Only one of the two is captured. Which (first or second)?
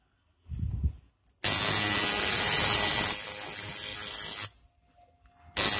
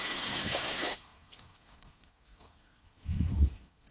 first